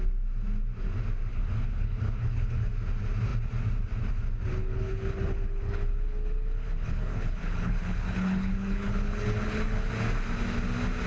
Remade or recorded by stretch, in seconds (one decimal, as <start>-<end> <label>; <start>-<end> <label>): 0.0-1.3 recorded; 1.3-2.7 remade; 2.7-4.6 recorded; 4.6-9.9 remade; 9.9-11.1 recorded